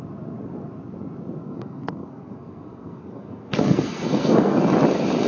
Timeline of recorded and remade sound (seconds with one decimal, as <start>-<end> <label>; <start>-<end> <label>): 0.0-1.4 recorded; 1.4-4.6 remade; 4.6-5.3 recorded